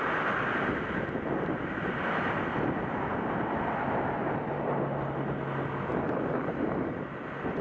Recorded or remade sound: recorded